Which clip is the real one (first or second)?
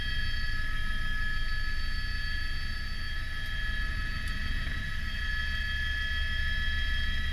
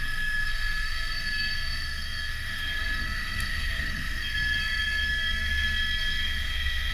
first